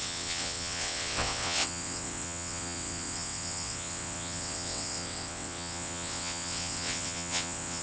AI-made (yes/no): yes